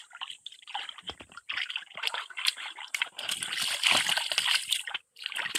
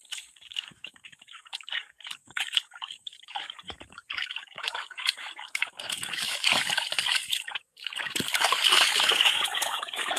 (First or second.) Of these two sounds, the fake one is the second